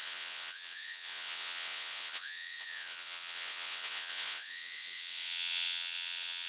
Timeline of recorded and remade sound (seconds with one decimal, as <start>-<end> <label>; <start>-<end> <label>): 0.0-6.5 remade